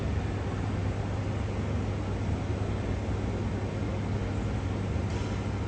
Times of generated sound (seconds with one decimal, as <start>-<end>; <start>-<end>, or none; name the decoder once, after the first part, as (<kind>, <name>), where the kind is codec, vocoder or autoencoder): none